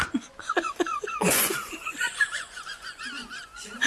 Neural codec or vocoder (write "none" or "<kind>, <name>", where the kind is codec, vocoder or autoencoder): vocoder, Vocos